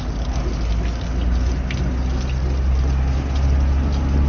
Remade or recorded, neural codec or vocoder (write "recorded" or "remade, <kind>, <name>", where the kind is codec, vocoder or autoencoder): recorded